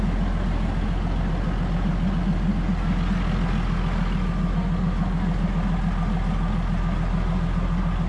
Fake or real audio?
real